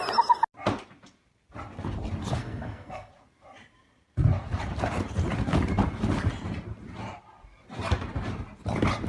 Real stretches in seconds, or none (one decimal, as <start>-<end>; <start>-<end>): 0.0-2.4; 3.1-9.1